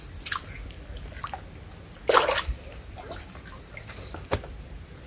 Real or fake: real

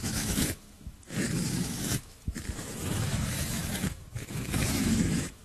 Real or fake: fake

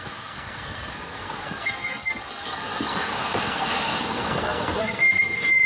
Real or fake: fake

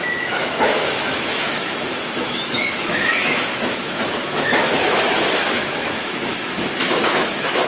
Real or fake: fake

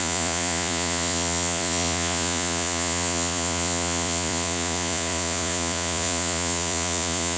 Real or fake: fake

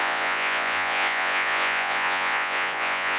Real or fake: fake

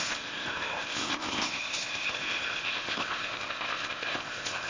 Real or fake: fake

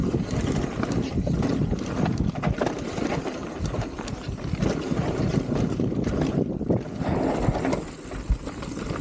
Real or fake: real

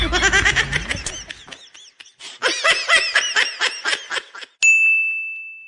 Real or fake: real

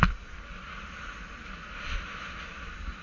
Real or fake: real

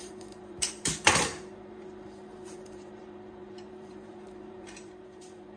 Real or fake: fake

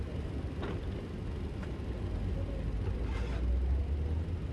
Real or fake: real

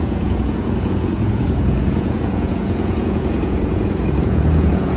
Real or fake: fake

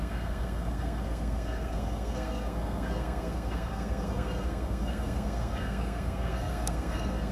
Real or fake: fake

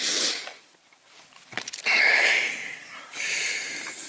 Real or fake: real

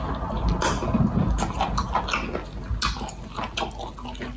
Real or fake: real